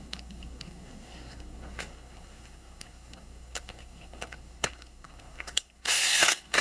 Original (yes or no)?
no